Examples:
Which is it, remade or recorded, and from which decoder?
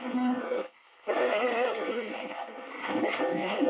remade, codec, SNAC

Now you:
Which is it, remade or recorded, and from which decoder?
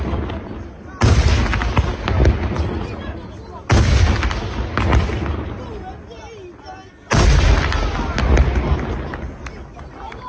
recorded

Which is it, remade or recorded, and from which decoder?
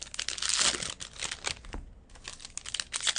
recorded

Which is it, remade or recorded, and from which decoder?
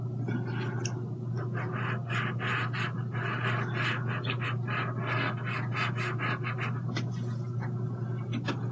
recorded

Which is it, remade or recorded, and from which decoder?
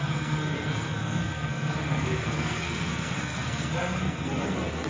remade, codec, SNAC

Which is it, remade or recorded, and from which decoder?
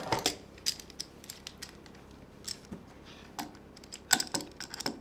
recorded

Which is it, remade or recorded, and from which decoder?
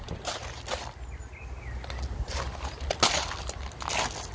recorded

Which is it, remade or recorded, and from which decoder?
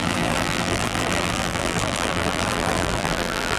remade, vocoder, BigVGAN v2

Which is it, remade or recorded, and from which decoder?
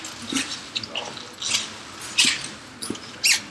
recorded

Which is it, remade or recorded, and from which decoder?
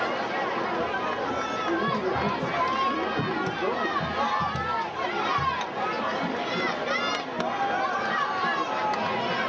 recorded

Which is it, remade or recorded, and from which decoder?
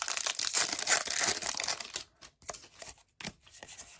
recorded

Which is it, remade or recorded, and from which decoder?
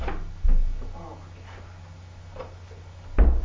recorded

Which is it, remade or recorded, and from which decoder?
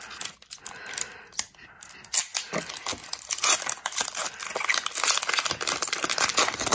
recorded